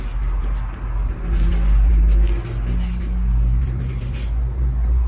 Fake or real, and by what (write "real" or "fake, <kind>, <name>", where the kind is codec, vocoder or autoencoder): real